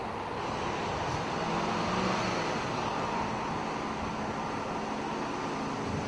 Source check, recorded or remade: recorded